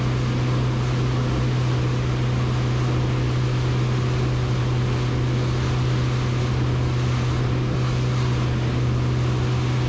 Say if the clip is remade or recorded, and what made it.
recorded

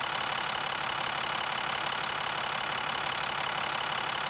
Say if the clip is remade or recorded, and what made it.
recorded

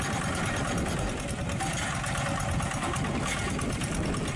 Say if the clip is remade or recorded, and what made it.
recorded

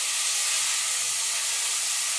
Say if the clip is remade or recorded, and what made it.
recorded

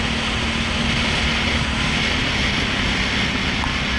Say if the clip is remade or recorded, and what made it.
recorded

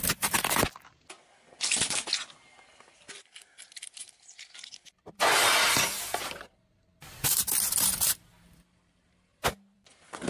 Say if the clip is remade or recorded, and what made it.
recorded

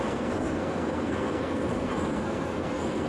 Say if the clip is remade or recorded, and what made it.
remade, codec, SNAC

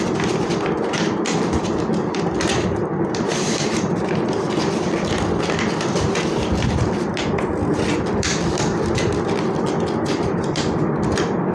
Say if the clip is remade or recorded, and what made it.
remade, vocoder, BigVGAN v2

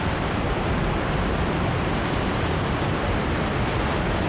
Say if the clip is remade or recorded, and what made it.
recorded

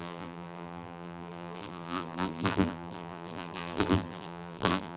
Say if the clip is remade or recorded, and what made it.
remade, vocoder, BigVGAN v2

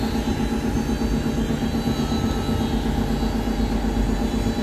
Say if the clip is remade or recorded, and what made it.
recorded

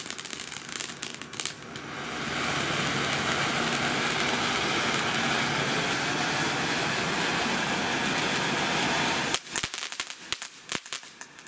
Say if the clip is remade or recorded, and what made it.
recorded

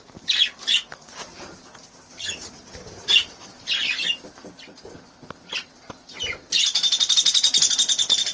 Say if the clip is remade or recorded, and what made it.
recorded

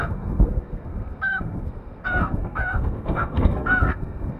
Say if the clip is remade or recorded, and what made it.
remade, codec, SNAC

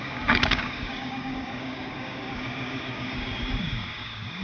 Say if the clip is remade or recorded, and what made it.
remade, codec, DAC